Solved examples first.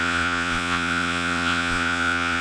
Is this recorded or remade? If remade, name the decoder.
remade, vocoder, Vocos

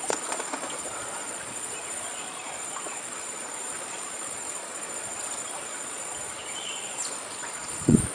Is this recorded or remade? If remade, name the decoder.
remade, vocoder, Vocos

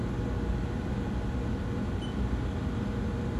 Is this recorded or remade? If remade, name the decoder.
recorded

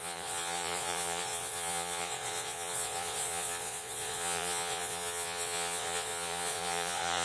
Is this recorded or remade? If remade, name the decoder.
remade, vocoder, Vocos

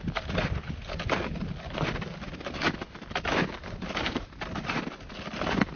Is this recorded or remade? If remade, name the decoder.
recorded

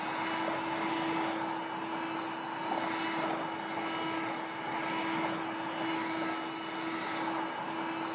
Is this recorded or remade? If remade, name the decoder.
recorded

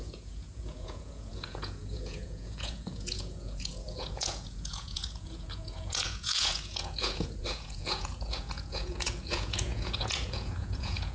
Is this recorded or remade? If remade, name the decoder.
remade, vocoder, Vocos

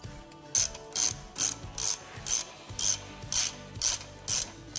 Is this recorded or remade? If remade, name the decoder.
recorded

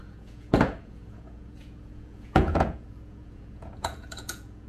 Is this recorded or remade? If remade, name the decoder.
remade, vocoder, Vocos